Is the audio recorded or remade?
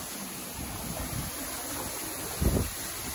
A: recorded